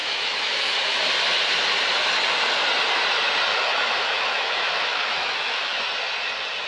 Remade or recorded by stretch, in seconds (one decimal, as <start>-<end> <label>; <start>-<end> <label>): 0.0-1.0 remade; 1.0-3.5 recorded; 3.5-5.8 remade; 5.8-6.7 recorded